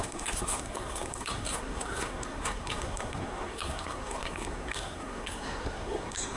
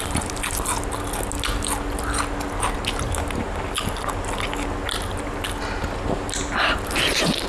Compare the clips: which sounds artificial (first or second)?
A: first